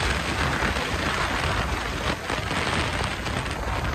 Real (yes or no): yes